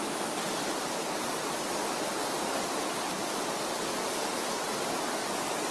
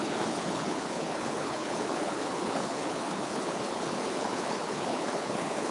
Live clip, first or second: first